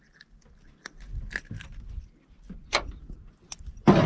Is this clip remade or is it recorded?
recorded